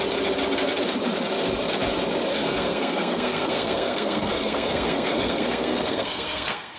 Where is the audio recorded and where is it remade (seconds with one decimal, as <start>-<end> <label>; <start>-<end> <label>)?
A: 0.0-2.3 recorded; 2.3-6.8 remade